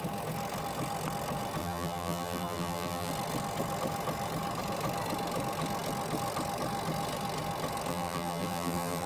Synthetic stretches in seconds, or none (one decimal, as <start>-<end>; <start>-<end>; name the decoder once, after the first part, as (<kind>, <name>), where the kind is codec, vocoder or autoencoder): 1.6-3.1 (vocoder, BigVGAN v2); 7.9-9.1